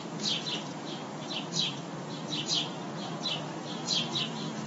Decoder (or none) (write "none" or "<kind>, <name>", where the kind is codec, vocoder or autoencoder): none